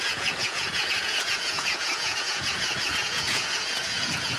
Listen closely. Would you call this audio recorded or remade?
remade